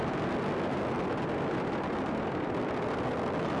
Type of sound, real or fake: real